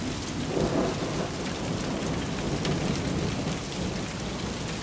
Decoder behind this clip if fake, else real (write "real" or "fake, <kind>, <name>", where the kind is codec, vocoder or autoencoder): real